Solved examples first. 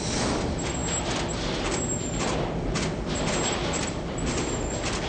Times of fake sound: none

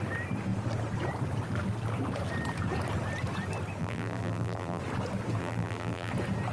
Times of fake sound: 3.8-4.8; 5.4-6.1

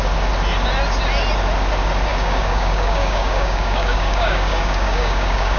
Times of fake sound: 2.1-5.6

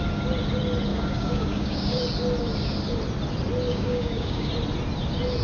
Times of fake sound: 0.9-2.0; 3.7-4.5

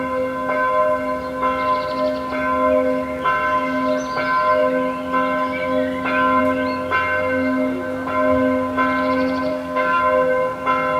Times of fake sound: 9.5-10.0

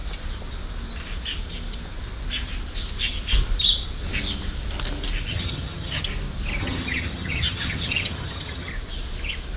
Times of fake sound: 5.3-6.0; 6.6-8.7

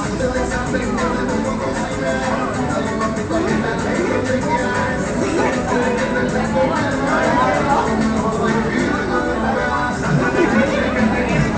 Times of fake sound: none